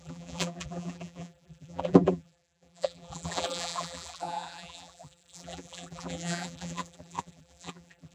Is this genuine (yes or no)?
no